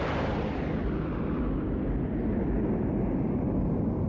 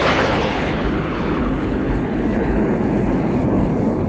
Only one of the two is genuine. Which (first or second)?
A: first